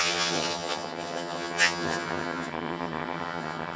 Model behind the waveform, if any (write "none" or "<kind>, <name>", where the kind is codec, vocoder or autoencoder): vocoder, HiFi-GAN